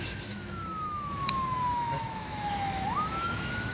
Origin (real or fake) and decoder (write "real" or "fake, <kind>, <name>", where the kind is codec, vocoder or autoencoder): fake, autoencoder, DAC-VAE